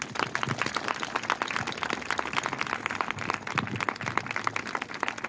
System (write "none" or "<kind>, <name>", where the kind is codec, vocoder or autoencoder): none